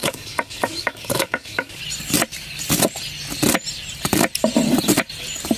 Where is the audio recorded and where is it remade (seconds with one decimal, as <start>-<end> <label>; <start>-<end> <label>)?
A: 0.0-1.8 remade; 1.8-5.6 recorded

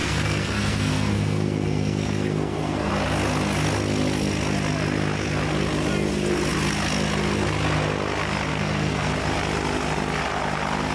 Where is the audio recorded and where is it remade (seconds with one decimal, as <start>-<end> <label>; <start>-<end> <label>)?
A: 0.0-2.9 remade; 2.9-8.5 recorded; 8.5-9.1 remade; 9.1-10.9 recorded